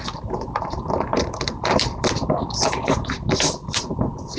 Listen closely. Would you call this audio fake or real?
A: fake